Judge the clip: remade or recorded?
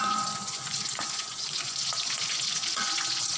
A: remade